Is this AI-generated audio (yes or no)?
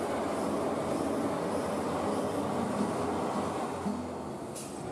no